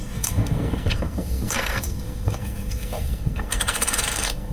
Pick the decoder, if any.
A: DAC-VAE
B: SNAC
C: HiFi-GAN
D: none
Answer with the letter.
B